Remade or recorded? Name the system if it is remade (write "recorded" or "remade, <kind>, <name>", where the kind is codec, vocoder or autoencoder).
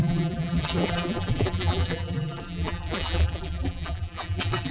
remade, vocoder, BigVGAN v2